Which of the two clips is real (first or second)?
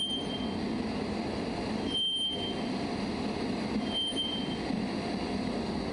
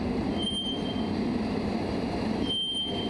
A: first